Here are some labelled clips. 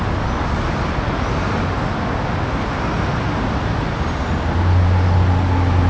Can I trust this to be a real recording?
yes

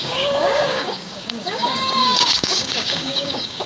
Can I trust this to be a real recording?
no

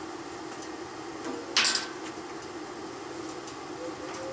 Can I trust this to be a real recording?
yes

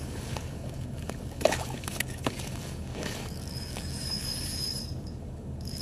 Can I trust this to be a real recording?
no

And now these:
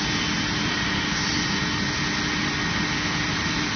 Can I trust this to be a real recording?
yes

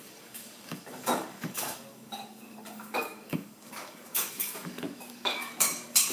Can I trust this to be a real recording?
no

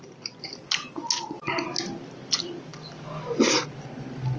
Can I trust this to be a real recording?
yes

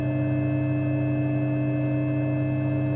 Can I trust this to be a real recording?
yes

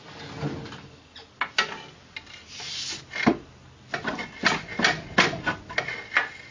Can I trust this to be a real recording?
yes